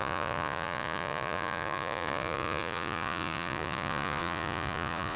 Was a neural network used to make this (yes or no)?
yes